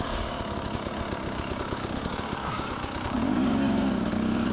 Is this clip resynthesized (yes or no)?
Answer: yes